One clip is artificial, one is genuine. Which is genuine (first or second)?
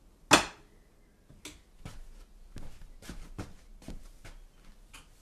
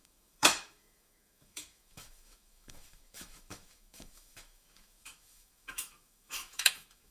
first